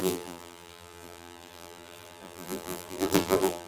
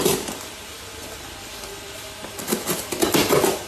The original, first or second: second